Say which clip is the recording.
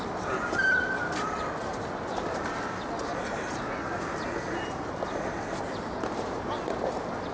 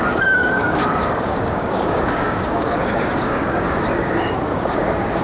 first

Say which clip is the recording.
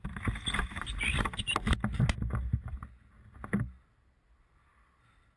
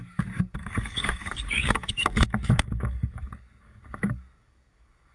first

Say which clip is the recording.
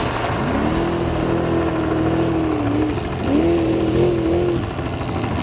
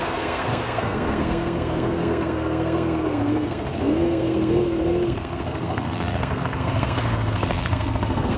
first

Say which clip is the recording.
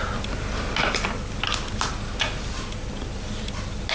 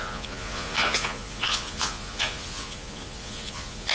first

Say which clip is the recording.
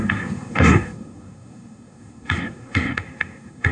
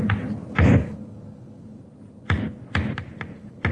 second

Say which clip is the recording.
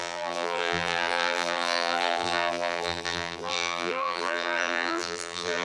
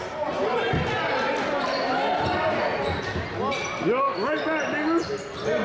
second